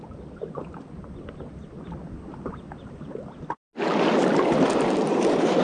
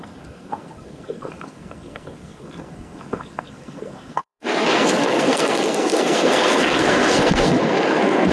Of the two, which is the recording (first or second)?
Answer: first